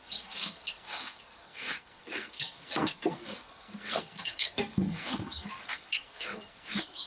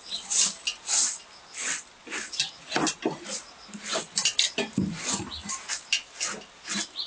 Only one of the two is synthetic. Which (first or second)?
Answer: first